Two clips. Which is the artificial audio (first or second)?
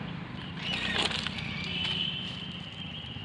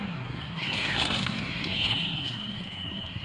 second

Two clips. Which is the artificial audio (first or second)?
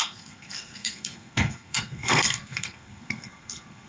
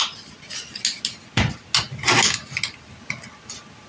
first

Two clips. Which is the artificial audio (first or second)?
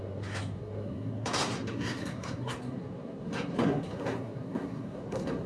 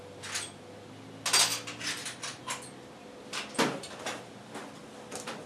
first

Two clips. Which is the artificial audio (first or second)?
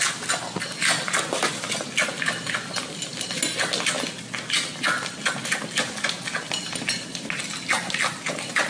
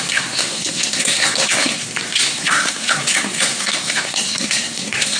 second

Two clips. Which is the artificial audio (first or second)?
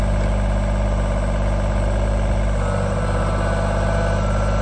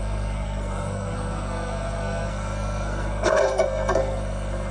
second